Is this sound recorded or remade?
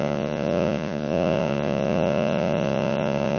remade